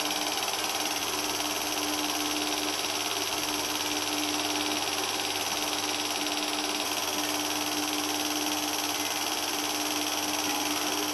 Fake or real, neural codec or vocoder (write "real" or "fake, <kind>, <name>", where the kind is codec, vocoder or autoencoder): real